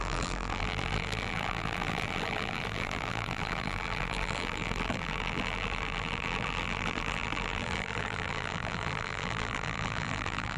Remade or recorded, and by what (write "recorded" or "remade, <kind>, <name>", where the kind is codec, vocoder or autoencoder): remade, vocoder, BigVGAN v2